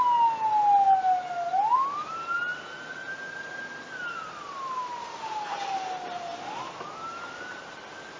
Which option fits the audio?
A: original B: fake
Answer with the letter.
A